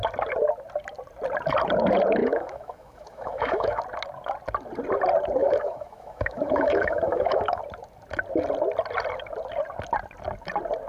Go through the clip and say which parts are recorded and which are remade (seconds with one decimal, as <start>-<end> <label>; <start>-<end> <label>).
0.0-2.2 recorded; 2.2-3.8 remade; 3.8-5.4 recorded; 5.4-7.6 remade; 7.6-10.9 recorded